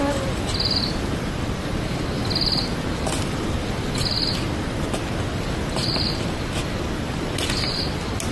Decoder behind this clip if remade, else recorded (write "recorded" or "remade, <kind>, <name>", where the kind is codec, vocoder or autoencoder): recorded